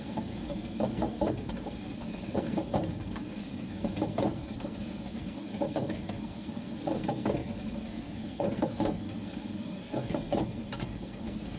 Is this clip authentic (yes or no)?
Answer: no